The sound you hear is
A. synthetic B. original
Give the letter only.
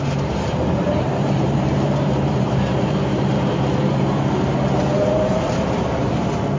A